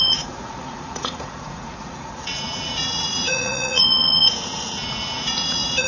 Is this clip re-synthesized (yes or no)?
yes